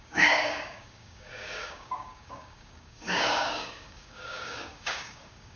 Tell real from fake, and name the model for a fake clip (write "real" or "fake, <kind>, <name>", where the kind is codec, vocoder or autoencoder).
fake, codec, DAC